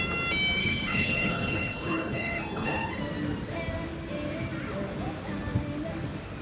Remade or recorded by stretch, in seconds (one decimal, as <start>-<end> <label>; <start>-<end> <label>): 0.0-0.6 recorded; 0.6-3.0 remade; 3.0-6.4 recorded